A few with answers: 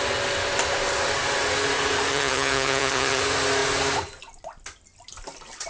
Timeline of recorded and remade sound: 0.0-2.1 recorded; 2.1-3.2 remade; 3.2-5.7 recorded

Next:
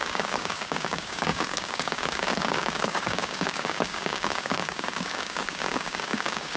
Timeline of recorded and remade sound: 0.0-6.6 remade